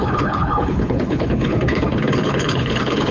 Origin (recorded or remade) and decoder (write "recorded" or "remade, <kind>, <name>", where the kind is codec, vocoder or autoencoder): remade, codec, HILCodec